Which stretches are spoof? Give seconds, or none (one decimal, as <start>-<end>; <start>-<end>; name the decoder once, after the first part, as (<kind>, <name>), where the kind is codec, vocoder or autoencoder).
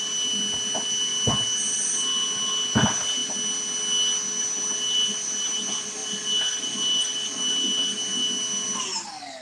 none